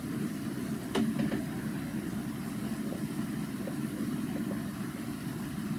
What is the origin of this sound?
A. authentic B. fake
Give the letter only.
A